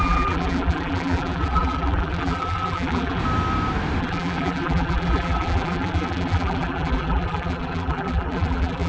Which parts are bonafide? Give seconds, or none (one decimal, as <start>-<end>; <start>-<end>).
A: 3.2-4.0